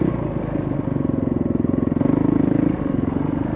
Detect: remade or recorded recorded